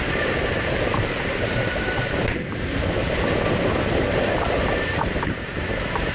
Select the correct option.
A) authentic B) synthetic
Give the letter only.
B